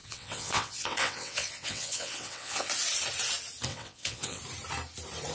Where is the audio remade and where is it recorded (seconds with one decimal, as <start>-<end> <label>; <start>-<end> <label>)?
0.0-2.7 remade; 2.7-3.7 recorded; 3.7-4.4 remade; 4.4-5.3 recorded